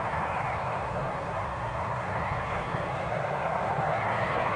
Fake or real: fake